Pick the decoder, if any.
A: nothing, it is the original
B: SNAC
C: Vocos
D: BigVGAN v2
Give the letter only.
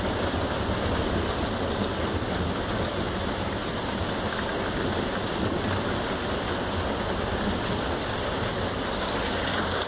A